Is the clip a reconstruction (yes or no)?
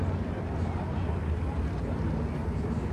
no